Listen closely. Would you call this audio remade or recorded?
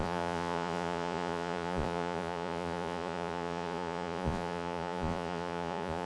remade